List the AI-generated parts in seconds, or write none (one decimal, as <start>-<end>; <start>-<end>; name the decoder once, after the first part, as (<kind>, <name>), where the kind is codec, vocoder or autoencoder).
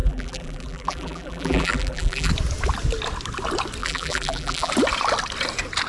0.0-2.3 (vocoder, BigVGAN v2); 3.8-4.7